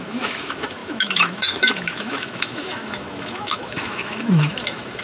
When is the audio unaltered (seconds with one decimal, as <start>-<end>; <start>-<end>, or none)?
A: none